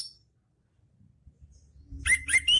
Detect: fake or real real